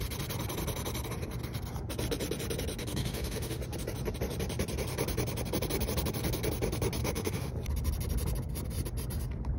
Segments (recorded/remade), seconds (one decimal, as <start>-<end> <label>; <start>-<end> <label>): 0.0-2.8 recorded; 2.8-3.6 remade; 3.6-7.0 recorded; 7.0-7.5 remade; 7.5-9.6 recorded